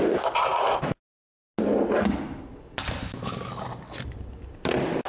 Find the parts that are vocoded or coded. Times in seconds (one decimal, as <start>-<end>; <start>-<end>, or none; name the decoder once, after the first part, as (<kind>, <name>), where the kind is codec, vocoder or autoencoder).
3.0-3.6 (autoencoder, DAC-VAE)